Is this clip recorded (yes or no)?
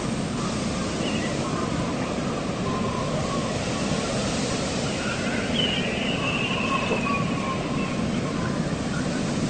yes